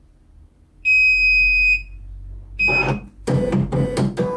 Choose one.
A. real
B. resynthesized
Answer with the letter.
A